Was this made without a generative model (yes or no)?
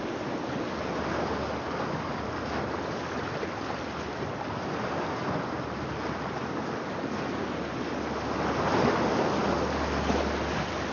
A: yes